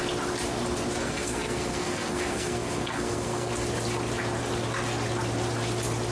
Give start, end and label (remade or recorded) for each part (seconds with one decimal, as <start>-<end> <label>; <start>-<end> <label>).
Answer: 0.0-1.0 recorded; 1.0-3.5 remade; 3.5-6.1 recorded